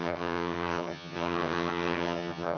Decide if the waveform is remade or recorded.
remade